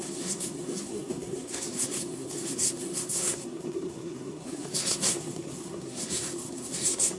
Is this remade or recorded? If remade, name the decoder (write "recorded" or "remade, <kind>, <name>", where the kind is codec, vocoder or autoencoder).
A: remade, codec, SNAC